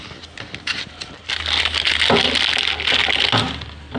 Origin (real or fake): real